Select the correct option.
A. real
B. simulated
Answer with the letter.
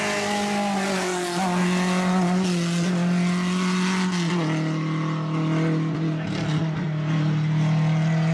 A